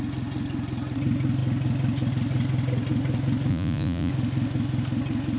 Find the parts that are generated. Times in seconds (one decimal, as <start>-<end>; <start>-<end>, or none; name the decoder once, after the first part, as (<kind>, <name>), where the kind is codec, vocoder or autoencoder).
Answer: 3.5-4.1 (vocoder, Vocos)